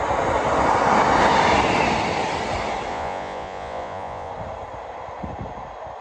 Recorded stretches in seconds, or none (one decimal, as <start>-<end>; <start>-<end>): 0.0-2.9; 4.3-6.0